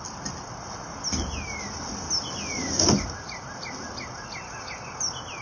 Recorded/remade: recorded